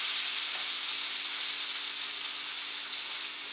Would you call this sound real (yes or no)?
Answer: yes